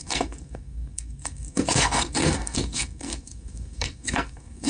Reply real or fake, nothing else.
fake